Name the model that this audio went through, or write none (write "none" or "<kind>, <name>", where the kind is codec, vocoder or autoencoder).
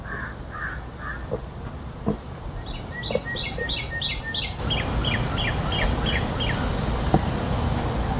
none